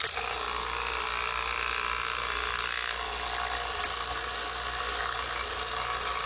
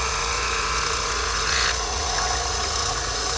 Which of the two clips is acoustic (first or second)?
first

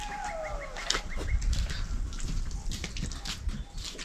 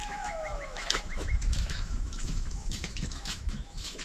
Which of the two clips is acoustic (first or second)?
first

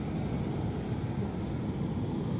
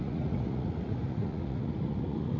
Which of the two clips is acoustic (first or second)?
first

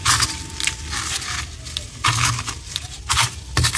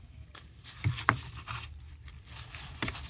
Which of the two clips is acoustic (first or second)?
first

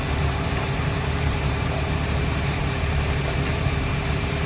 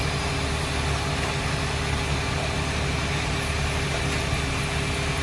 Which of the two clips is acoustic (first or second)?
second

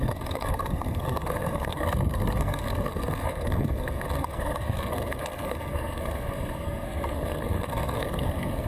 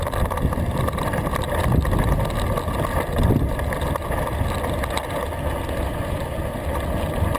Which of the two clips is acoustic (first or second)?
second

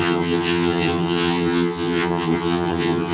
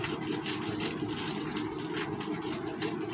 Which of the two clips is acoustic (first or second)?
second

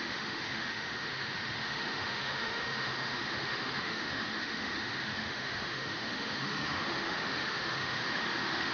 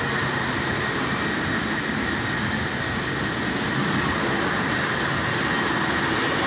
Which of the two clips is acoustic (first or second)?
second